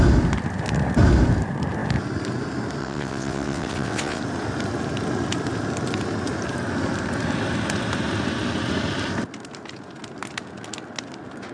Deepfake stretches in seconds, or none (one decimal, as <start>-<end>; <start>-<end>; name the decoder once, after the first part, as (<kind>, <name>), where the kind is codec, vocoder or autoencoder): 2.8-4.2 (vocoder, WaveNeXt)